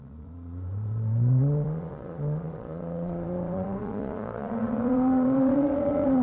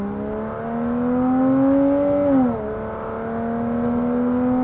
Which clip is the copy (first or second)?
first